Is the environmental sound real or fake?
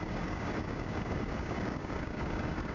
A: fake